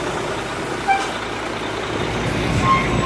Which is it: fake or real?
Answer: real